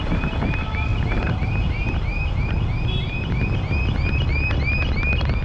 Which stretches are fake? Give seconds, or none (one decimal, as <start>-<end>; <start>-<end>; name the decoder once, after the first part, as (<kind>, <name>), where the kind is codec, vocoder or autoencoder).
0.9-3.3 (vocoder, BigVGAN v2)